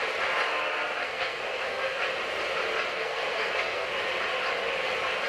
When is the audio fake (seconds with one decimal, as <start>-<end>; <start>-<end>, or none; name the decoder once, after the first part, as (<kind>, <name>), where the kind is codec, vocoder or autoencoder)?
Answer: 1.0-2.1 (codec, SNAC); 2.9-3.9